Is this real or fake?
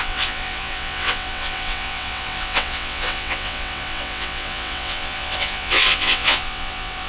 fake